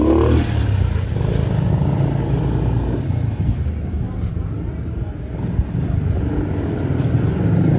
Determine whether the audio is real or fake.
real